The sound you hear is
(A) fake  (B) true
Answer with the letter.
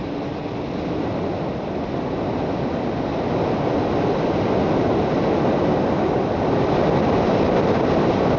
B